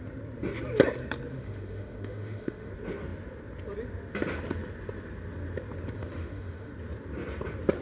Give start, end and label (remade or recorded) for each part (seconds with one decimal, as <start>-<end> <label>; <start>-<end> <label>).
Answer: 0.0-1.3 recorded; 1.3-2.7 remade; 2.7-6.0 recorded; 6.0-6.7 remade; 6.7-7.8 recorded